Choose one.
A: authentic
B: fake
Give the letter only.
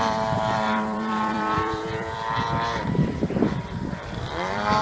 B